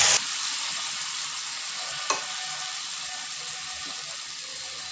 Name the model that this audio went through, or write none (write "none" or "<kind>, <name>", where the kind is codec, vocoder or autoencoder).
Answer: none